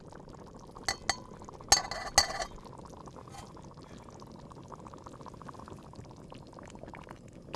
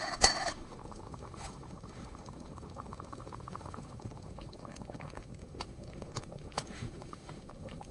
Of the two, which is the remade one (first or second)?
second